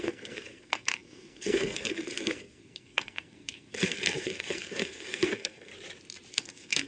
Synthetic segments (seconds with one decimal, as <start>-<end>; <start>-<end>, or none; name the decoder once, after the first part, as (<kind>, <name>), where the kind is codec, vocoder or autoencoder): 0.0-5.7 (codec, SNAC); 6.3-6.9